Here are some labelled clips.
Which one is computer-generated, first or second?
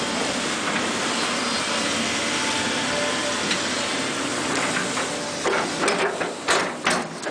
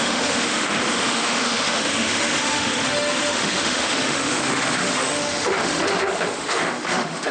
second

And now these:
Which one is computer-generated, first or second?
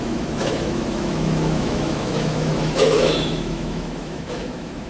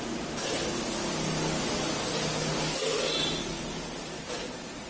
first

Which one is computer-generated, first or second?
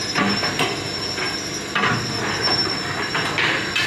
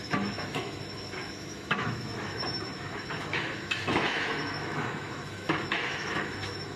second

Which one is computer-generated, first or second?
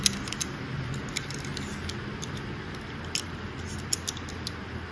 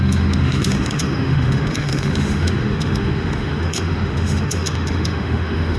second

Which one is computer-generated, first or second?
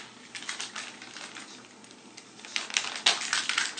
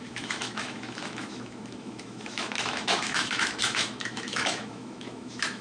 second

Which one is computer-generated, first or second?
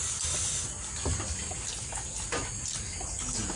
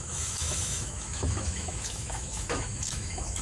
second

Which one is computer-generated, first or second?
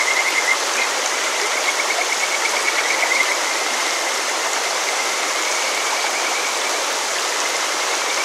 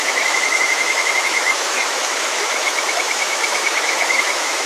second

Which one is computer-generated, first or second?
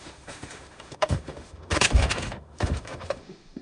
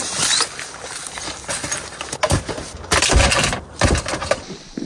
first